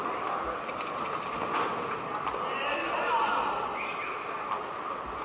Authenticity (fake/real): real